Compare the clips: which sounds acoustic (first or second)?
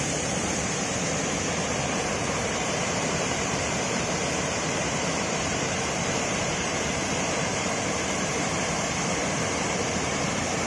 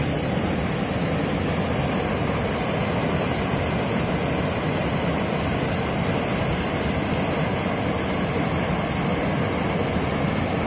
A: second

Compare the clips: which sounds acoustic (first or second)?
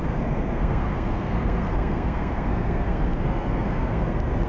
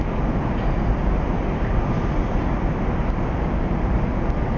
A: second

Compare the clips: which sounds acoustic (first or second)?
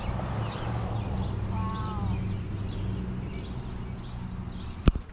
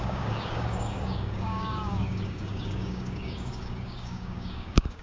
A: first